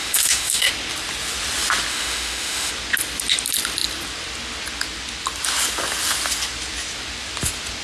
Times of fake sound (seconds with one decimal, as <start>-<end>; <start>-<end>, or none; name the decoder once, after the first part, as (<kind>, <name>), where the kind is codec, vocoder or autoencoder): 0.0-0.7 (autoencoder, DAC-VAE); 1.9-2.7